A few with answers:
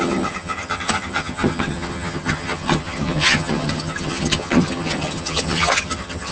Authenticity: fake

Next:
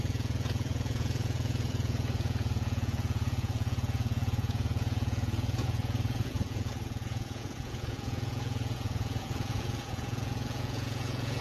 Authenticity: fake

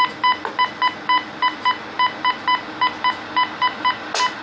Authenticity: real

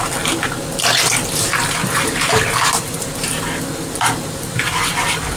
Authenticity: fake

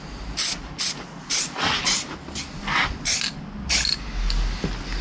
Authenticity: real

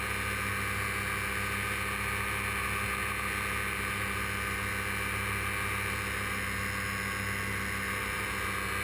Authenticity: real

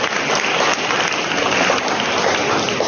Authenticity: real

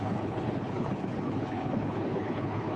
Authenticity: fake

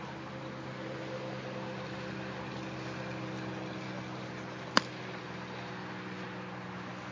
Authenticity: real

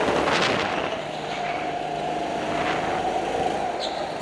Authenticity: real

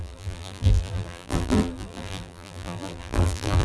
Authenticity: fake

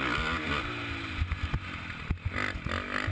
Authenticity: real